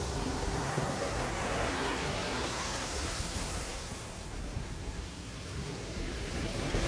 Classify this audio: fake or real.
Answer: fake